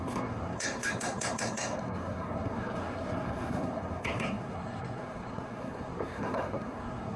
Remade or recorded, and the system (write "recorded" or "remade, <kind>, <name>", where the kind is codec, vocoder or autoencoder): remade, codec, SNAC